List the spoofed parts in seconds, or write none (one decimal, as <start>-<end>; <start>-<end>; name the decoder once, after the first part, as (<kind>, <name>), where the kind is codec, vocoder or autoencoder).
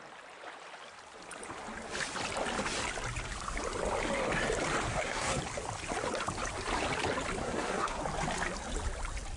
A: 4.9-5.4 (codec, SNAC); 7.4-8.0